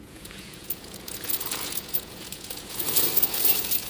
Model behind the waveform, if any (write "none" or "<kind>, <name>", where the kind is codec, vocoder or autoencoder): vocoder, Vocos